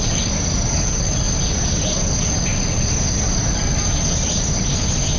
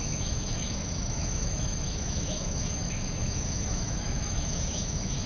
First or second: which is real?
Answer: first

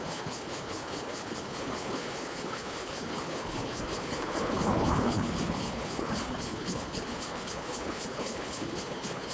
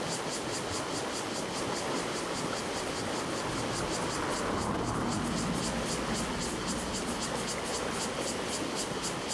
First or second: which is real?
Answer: second